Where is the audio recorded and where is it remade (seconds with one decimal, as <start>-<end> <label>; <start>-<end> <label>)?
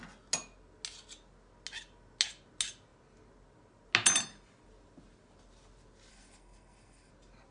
0.0-6.1 recorded; 6.1-7.1 remade; 7.1-7.5 recorded